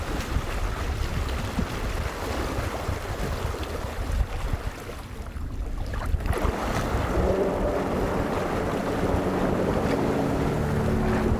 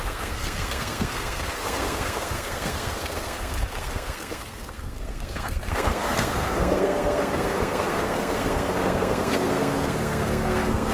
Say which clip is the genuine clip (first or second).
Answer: first